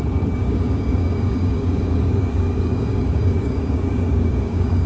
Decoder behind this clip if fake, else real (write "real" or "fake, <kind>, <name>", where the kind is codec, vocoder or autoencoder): fake, codec, DAC